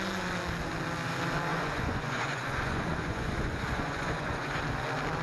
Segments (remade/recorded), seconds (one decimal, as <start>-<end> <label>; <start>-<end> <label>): 0.0-1.5 recorded; 1.5-4.6 remade; 4.6-5.2 recorded